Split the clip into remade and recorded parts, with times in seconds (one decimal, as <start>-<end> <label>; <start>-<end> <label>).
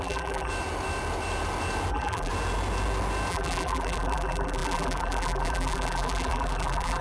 0.0-0.5 remade; 0.5-1.9 recorded; 1.9-2.3 remade; 2.3-3.3 recorded; 3.3-7.0 remade